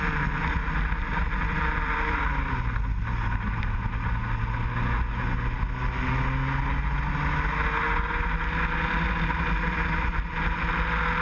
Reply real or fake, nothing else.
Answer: real